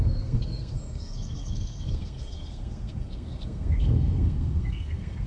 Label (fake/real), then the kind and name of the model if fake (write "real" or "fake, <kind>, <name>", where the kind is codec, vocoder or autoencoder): fake, codec, SNAC